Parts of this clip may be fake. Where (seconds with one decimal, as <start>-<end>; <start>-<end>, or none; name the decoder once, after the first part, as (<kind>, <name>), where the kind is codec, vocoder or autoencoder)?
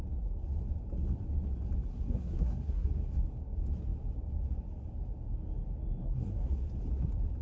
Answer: 1.9-3.2 (codec, SNAC); 6.0-6.7